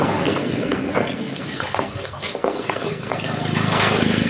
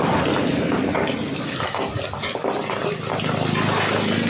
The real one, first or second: second